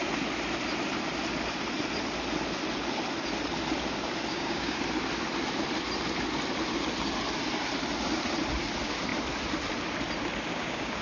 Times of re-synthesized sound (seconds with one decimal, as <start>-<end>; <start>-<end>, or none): 4.3-4.8; 10.5-11.0